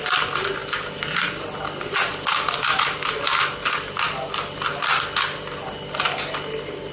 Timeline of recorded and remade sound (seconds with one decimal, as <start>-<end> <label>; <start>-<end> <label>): 0.0-6.9 recorded

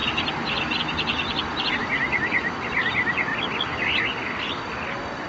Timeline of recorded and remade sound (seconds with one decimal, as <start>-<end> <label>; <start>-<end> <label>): 0.0-0.8 remade; 0.8-2.0 recorded; 2.0-2.6 remade; 2.6-5.3 recorded

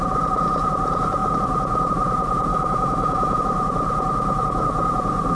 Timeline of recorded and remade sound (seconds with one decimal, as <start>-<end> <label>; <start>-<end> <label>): 0.0-2.5 recorded; 2.5-3.4 remade; 3.4-5.3 recorded